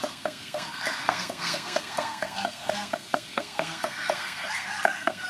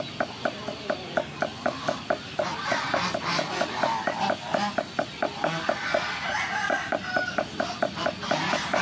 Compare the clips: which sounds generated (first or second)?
first